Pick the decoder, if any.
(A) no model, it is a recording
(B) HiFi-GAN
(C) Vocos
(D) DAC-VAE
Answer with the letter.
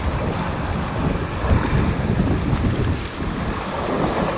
A